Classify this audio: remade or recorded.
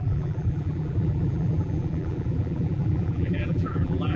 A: remade